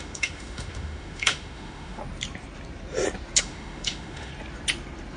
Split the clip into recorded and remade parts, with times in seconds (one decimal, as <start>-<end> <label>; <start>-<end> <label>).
0.0-2.0 remade; 2.0-3.4 recorded; 3.4-4.3 remade; 4.3-5.2 recorded